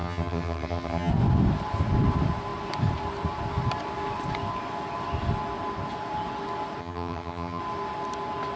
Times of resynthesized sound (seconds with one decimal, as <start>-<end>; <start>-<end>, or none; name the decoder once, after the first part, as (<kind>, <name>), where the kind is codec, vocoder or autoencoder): 0.0-1.1 (vocoder, HiFi-GAN); 6.8-7.6